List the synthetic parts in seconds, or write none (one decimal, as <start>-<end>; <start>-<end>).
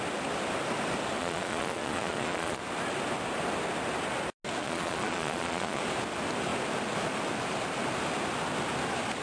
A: 1.2-2.6; 4.6-5.8